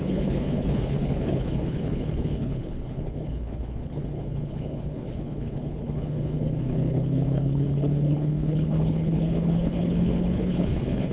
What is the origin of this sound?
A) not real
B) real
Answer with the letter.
A